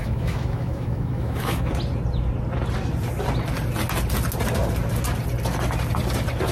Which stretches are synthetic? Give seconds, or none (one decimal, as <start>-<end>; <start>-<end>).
0.0-1.7